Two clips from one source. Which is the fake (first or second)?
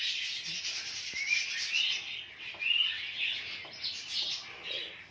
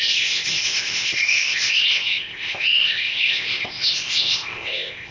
second